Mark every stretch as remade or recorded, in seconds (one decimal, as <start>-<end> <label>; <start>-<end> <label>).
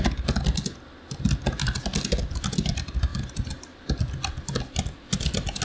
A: 0.0-5.6 recorded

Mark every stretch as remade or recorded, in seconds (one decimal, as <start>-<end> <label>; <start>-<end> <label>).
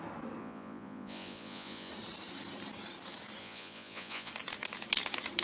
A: 0.0-0.4 recorded; 0.4-1.9 remade; 1.9-3.4 recorded; 3.4-4.3 remade; 4.3-5.4 recorded